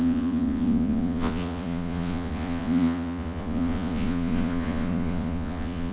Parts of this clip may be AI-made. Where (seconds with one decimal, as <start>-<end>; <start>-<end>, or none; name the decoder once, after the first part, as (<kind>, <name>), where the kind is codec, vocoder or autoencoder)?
0.0-5.9 (vocoder, Vocos)

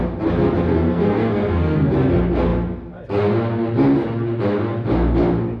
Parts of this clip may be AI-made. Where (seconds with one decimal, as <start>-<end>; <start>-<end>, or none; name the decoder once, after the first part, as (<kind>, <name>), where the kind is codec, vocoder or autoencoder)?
0.7-1.9 (codec, SNAC)

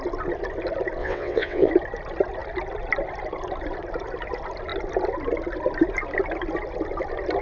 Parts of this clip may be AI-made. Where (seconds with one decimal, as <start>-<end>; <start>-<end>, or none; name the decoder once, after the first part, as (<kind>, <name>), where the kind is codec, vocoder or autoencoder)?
1.0-1.7 (vocoder, WaveNeXt)

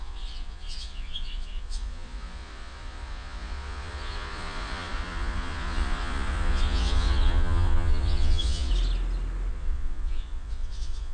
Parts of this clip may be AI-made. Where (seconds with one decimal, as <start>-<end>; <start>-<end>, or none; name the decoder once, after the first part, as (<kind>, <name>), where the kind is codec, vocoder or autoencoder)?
0.0-8.7 (vocoder, Vocos); 9.5-11.1

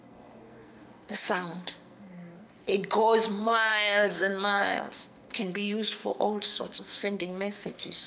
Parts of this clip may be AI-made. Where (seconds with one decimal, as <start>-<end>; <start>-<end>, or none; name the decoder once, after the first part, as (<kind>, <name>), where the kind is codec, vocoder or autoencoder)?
0.0-2.7 (codec, SNAC); 3.3-8.1

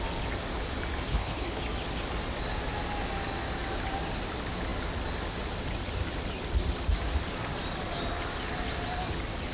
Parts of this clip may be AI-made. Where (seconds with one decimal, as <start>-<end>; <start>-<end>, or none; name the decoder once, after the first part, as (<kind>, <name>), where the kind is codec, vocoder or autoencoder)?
1.1-1.6 (codec, HILCodec)

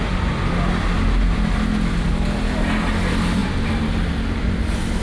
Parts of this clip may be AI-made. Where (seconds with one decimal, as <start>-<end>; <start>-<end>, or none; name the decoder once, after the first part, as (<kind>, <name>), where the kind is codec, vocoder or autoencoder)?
none